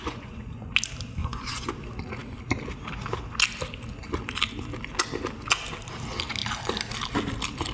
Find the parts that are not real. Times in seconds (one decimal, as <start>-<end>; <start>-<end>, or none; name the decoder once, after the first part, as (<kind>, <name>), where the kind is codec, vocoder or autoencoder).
0.0-0.7 (vocoder, Vocos); 1.2-1.7